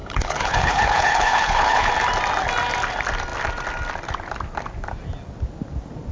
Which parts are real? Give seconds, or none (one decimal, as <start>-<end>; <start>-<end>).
1.9-6.1